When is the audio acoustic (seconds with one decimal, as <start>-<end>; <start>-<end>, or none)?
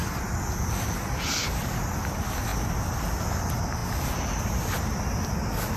0.0-5.8